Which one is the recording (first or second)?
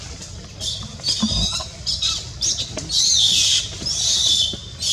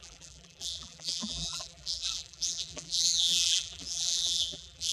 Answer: first